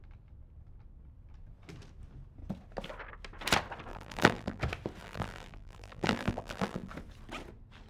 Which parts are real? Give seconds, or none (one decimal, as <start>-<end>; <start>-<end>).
0.0-3.9; 4.6-5.0; 6.9-7.9